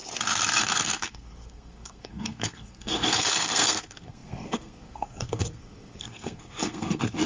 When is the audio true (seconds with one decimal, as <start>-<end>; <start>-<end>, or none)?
0.0-0.6

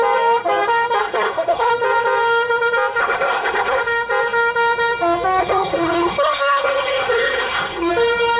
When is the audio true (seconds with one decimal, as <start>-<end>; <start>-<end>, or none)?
0.0-1.0; 1.7-3.0; 3.8-5.4; 7.9-8.4

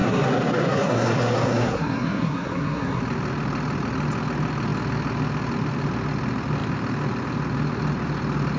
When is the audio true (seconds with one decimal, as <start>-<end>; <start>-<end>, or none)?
3.0-8.6

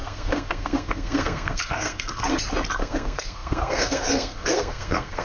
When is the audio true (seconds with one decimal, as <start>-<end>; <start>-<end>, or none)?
2.3-2.8

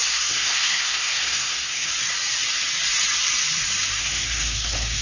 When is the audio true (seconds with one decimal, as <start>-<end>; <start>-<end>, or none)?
1.9-4.0

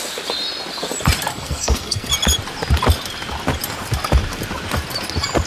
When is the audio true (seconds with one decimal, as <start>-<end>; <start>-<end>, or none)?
0.0-1.3; 2.1-5.5